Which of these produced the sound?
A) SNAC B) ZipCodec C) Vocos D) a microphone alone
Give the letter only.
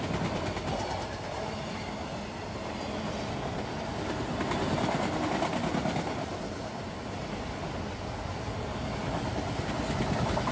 D